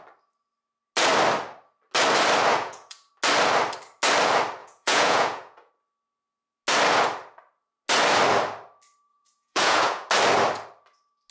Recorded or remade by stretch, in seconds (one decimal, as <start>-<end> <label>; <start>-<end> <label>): 0.0-2.5 recorded; 2.5-3.1 remade; 3.1-4.6 recorded; 4.6-5.7 remade; 5.7-9.1 recorded; 9.1-10.1 remade; 10.1-11.3 recorded